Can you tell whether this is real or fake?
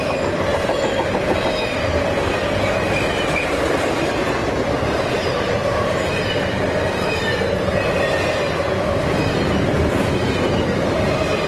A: real